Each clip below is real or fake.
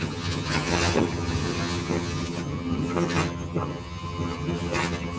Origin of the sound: fake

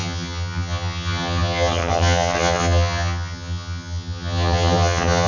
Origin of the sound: fake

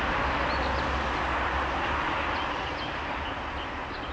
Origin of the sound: real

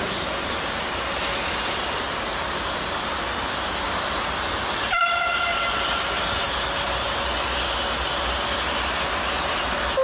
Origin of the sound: real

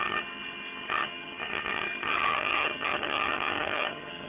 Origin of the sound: fake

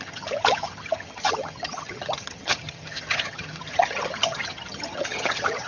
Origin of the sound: fake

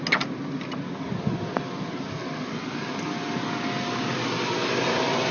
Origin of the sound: real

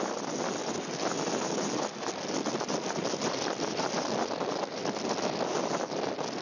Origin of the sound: real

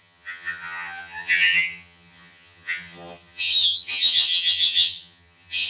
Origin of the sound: fake